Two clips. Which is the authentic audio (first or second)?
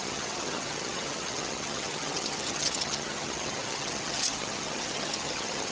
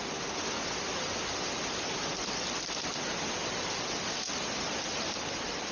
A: second